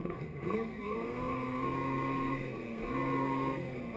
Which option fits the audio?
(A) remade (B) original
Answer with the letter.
A